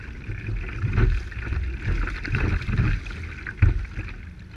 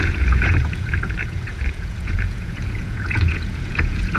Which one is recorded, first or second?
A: first